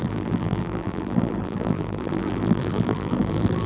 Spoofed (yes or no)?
yes